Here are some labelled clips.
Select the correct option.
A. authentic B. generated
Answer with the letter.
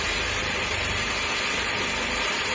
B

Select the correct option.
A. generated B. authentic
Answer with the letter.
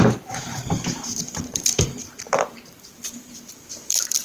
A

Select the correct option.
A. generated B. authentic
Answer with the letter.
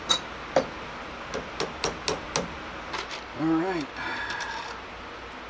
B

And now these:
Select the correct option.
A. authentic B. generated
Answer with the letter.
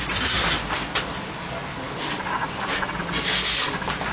A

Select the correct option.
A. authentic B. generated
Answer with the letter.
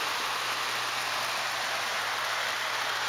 A